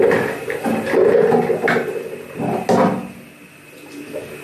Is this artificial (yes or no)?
no